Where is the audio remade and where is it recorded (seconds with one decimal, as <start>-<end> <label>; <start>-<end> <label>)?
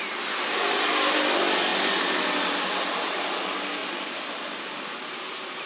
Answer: 0.0-3.8 recorded; 3.8-4.6 remade; 4.6-5.7 recorded